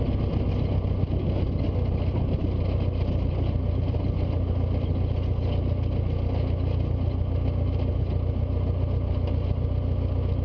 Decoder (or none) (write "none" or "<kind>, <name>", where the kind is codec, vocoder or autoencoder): none